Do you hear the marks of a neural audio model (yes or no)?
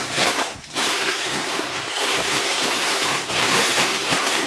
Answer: yes